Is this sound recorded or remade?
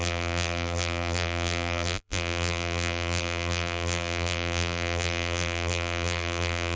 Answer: remade